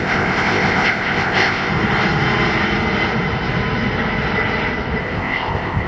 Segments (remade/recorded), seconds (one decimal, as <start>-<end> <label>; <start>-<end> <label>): 0.0-1.7 remade; 1.7-5.0 recorded; 5.0-5.9 remade